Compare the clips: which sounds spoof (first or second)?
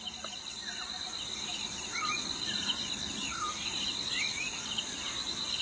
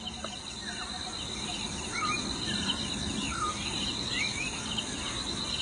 first